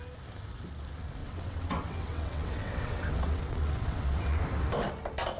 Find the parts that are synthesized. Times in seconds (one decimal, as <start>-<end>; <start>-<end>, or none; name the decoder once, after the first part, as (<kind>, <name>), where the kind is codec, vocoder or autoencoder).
1.2-4.4 (vocoder, WaveNeXt)